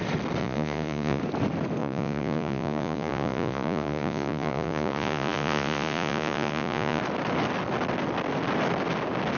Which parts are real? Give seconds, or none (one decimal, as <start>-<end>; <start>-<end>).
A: 0.0-0.4; 1.2-1.8; 7.0-9.4